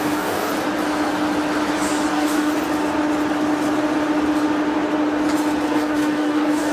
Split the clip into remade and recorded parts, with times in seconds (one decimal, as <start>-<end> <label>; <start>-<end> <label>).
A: 0.0-0.5 remade; 0.5-2.1 recorded; 2.1-2.5 remade; 2.5-5.7 recorded; 5.7-6.7 remade